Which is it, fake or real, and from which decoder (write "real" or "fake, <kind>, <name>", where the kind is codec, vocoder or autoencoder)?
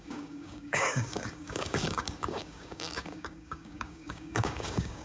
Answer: fake, codec, DAC